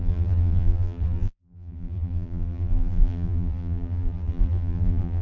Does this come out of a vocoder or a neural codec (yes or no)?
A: yes